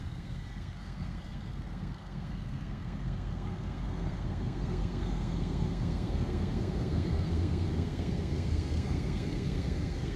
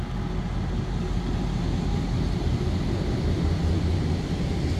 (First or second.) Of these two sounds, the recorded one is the second